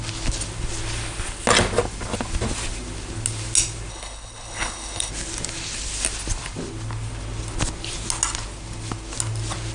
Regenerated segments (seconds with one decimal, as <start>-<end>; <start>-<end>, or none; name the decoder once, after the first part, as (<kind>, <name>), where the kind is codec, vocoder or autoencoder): 3.9-5.1 (codec, HILCodec)